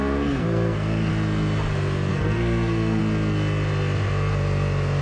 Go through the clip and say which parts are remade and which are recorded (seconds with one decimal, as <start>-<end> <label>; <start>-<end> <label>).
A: 0.0-1.1 remade; 1.1-2.1 recorded; 2.1-3.0 remade; 3.0-5.0 recorded